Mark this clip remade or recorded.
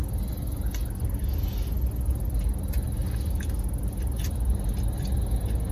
recorded